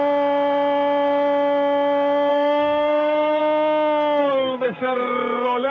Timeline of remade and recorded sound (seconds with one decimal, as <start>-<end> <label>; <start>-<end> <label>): 0.0-2.3 recorded; 2.3-3.4 remade; 3.4-4.2 recorded; 4.2-5.7 remade